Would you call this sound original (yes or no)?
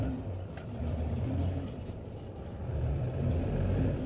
yes